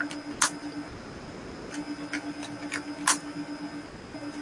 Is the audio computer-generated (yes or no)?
no